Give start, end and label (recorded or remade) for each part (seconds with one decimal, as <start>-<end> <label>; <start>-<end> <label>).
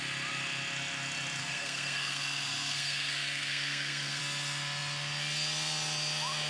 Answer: 0.0-1.4 recorded; 1.4-4.2 remade; 4.2-6.5 recorded